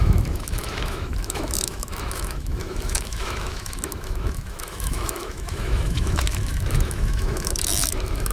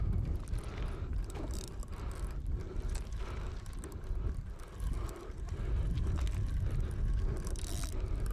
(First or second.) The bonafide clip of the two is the second